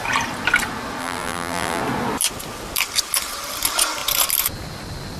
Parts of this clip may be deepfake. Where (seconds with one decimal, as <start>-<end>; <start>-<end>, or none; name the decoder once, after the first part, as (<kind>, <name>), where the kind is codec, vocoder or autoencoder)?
1.0-1.8 (vocoder, BigVGAN v2)

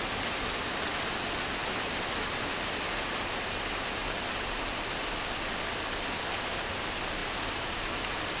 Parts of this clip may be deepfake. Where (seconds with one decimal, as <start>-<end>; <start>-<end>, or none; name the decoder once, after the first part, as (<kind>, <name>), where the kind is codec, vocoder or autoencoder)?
none

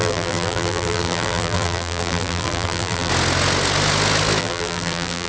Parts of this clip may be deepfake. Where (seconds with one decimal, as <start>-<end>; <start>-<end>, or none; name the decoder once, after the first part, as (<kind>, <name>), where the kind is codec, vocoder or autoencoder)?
0.0-3.1 (vocoder, BigVGAN v2); 4.4-5.3